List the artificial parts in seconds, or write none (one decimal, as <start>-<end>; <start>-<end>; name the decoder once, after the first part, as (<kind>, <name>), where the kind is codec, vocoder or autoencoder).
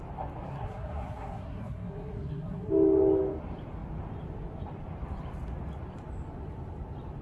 0.5-2.7 (codec, SNAC)